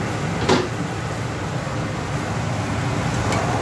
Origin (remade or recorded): recorded